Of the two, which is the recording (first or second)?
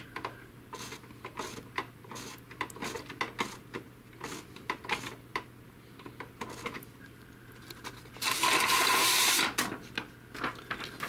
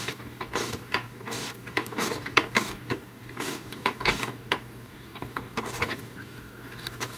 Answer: first